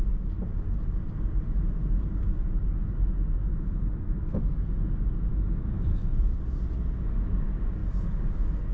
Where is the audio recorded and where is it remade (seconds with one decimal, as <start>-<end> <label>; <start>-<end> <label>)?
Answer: 0.0-3.5 recorded; 3.5-4.4 remade; 4.4-5.3 recorded; 5.3-6.1 remade; 6.1-8.7 recorded

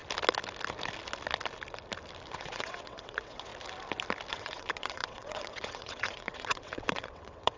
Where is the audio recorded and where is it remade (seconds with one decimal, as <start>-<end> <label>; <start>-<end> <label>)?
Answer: 0.0-2.3 recorded; 2.3-3.5 remade; 3.5-4.3 recorded; 4.3-7.6 remade

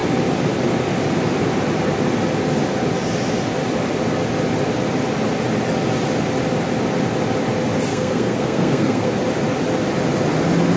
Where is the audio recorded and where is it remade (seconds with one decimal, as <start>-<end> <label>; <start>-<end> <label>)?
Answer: 0.0-7.9 recorded; 7.9-9.1 remade; 9.1-10.8 recorded

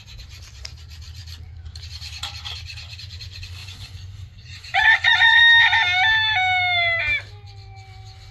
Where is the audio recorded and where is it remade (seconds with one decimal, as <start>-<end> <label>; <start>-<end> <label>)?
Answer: 0.0-3.6 recorded; 3.6-5.4 remade; 5.4-8.3 recorded

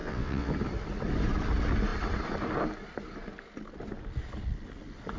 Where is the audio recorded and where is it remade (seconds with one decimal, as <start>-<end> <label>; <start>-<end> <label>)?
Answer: 0.0-0.5 remade; 0.5-5.2 recorded

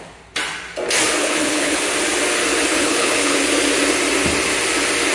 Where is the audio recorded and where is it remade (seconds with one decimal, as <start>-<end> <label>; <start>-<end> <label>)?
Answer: 0.0-1.2 recorded; 1.2-1.8 remade; 1.8-2.7 recorded; 2.7-3.4 remade; 3.4-5.1 recorded